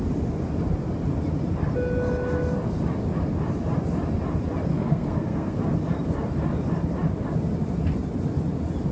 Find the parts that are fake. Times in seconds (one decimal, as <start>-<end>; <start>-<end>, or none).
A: 4.7-5.6